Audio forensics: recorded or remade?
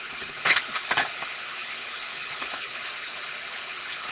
remade